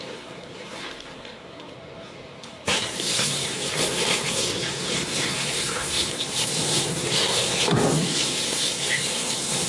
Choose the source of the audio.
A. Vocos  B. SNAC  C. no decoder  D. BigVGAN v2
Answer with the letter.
B